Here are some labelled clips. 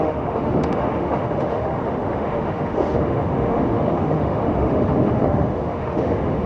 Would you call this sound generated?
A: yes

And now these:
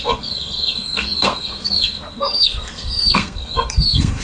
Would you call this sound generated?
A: yes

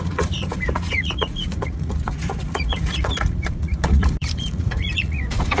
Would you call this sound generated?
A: yes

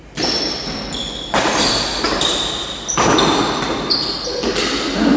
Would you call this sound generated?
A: no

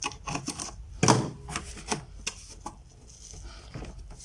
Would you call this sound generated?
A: no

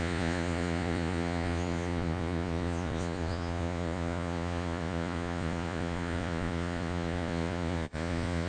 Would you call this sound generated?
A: yes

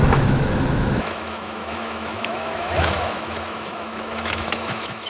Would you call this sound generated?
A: yes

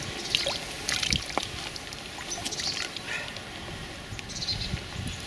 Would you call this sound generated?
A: no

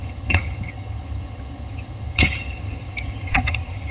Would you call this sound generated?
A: yes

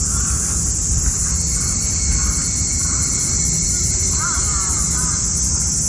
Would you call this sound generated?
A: no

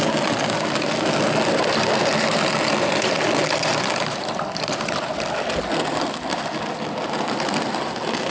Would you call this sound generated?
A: no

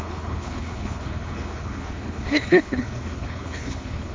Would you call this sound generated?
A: yes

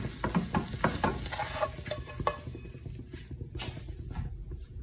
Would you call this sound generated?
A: no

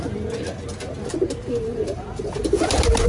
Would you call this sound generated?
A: no